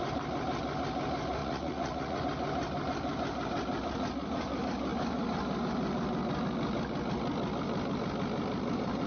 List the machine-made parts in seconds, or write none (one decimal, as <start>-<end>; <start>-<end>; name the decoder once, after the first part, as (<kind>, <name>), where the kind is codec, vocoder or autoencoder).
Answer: 1.4-2.2 (vocoder, Vocos)